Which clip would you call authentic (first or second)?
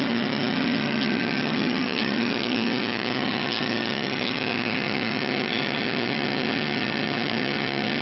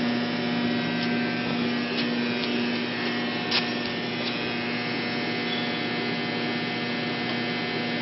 second